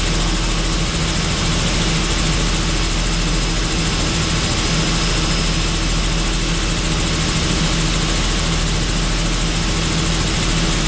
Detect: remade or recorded recorded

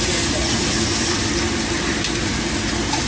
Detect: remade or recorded recorded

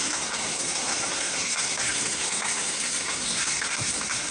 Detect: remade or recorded remade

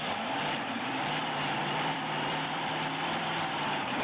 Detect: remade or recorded remade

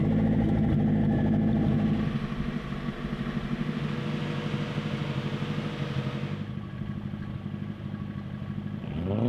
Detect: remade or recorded recorded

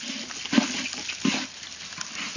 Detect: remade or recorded recorded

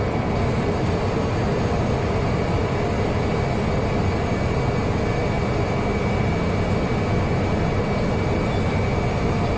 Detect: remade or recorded recorded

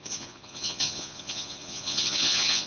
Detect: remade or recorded remade